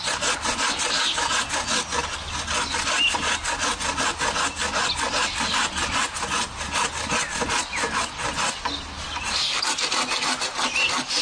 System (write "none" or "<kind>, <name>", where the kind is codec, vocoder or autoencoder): none